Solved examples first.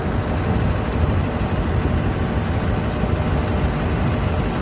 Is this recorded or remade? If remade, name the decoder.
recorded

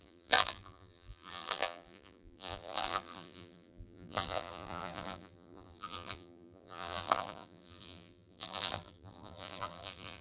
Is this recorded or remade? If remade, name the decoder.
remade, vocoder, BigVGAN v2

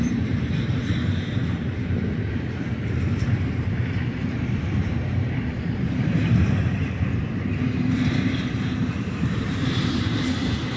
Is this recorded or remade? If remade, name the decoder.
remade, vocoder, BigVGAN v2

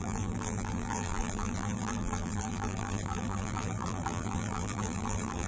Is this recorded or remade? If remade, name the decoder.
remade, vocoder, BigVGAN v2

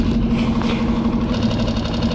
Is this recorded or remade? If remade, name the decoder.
recorded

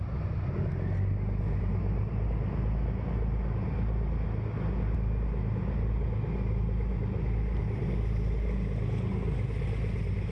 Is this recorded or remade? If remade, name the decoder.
recorded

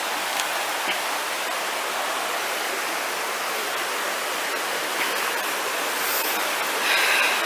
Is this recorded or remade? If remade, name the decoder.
recorded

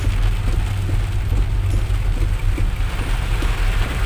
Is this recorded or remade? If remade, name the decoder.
recorded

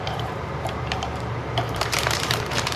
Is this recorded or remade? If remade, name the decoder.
remade, vocoder, BigVGAN v2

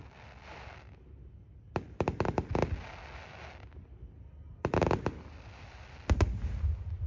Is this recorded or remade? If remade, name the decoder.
recorded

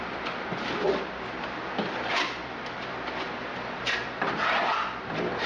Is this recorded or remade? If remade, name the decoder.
remade, vocoder, BigVGAN v2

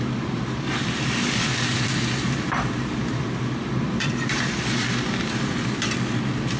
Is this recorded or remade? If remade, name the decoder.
remade, vocoder, BigVGAN v2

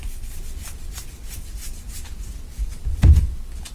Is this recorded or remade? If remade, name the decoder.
recorded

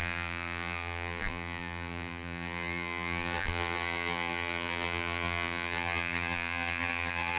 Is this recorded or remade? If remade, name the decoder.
remade, vocoder, BigVGAN v2